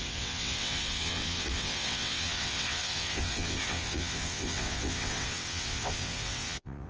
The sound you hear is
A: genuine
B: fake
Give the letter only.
B